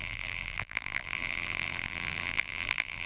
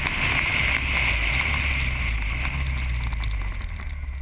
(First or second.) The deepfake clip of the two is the first